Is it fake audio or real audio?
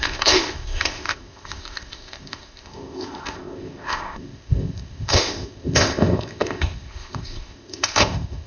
fake